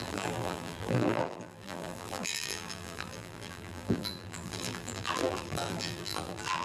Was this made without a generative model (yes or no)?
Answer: no